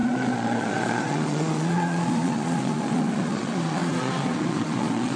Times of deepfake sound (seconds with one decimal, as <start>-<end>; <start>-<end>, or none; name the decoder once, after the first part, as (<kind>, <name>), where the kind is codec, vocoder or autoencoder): 0.0-5.2 (vocoder, Vocos)

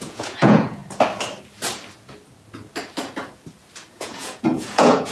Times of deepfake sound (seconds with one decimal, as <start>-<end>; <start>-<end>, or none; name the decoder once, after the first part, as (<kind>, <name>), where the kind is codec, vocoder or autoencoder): 0.0-0.8 (vocoder, Vocos); 3.9-5.1

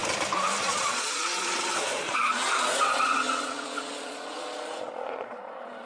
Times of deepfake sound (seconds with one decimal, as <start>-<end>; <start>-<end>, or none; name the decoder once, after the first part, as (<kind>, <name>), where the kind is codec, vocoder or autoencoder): 0.6-5.9 (vocoder, Vocos)

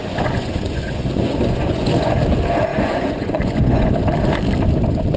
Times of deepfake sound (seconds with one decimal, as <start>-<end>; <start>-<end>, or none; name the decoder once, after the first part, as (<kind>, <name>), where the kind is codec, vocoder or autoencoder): 0.0-2.2 (vocoder, Vocos); 2.7-3.9